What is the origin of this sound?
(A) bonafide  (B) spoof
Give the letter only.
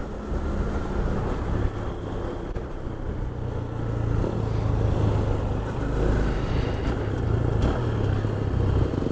A